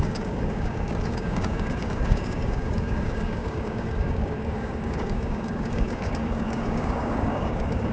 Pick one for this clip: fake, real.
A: fake